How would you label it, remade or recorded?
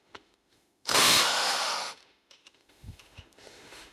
remade